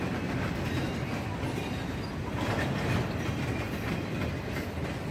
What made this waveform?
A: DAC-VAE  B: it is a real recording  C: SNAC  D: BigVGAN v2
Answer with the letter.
B